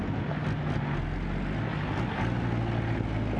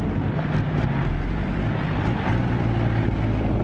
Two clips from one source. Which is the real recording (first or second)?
first